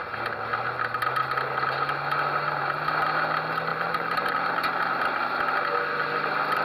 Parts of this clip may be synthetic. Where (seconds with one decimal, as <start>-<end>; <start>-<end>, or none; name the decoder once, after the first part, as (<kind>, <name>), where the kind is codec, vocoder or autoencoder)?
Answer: 3.7-5.4 (vocoder, BigVGAN v2)